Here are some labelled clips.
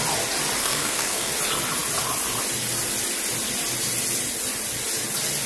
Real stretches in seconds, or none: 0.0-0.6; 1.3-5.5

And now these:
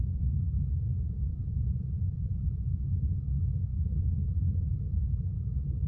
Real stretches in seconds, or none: 0.0-5.9

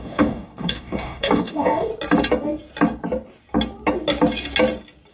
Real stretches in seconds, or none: 1.9-5.1

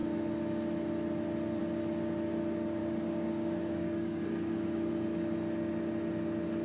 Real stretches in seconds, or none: 0.0-2.8; 4.9-6.6